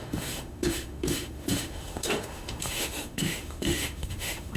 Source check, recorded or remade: remade